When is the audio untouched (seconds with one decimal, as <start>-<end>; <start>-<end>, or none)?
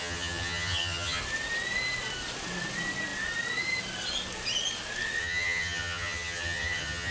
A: 1.2-5.2